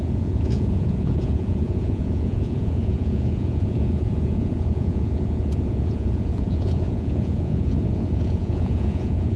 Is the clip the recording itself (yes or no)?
no